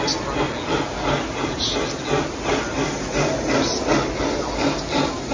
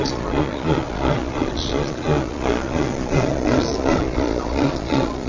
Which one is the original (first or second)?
first